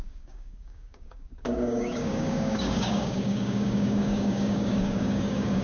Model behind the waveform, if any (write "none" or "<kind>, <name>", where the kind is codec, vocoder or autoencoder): codec, DAC